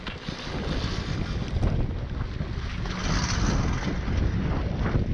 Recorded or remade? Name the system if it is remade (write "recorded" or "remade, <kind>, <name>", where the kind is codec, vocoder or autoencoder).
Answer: recorded